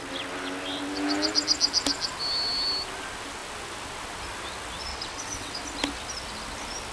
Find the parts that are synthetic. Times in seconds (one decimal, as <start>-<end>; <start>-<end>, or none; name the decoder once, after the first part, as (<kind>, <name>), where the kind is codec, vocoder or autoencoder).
4.9-5.6 (vocoder, WaveNeXt)